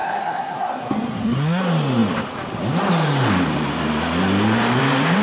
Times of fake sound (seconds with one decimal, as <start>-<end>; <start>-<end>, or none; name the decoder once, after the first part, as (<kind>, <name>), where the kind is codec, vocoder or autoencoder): 0.0-1.6 (codec, SNAC)